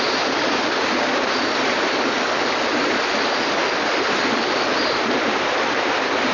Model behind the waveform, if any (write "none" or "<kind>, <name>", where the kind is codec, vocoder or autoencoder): none